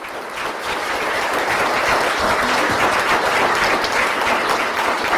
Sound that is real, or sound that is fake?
real